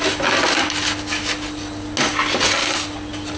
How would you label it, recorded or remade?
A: recorded